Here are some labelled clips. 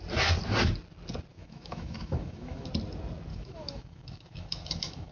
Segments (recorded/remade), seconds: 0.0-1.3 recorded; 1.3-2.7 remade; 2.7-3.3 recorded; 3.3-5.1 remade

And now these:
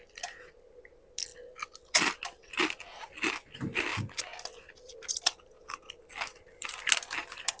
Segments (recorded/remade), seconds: 0.0-7.6 recorded

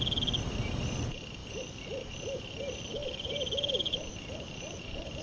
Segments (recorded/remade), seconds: 0.0-3.0 recorded; 3.0-5.2 remade

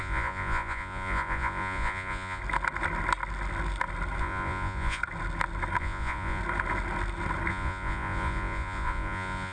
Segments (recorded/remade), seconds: 0.0-2.4 remade; 2.4-4.2 recorded; 4.2-5.0 remade; 5.0-5.8 recorded; 5.8-6.4 remade; 6.4-7.5 recorded; 7.5-9.5 remade

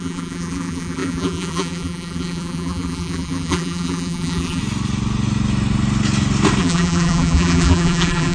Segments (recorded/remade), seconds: 0.0-4.6 remade; 4.6-6.6 recorded; 6.6-8.3 remade

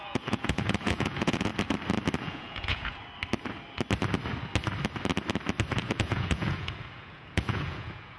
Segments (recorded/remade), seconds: 0.0-1.5 remade; 1.5-2.2 recorded; 2.2-3.0 remade; 3.0-5.8 recorded; 5.8-8.2 remade